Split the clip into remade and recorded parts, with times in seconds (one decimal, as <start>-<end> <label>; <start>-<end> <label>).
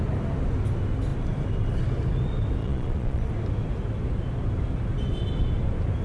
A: 0.0-2.6 recorded; 2.6-3.3 remade; 3.3-6.0 recorded